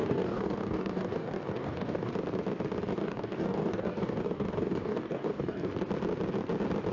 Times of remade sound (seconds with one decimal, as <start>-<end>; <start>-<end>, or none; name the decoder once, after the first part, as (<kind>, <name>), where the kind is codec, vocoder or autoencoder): 0.0-2.1 (codec, DAC); 3.0-5.7